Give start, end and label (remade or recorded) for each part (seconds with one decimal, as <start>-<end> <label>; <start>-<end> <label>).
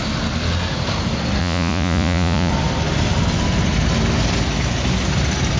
0.0-1.4 recorded; 1.4-2.5 remade; 2.5-5.6 recorded